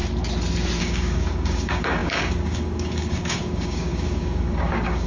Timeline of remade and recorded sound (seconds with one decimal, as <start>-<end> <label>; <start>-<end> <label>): 0.0-0.8 recorded; 0.8-5.1 remade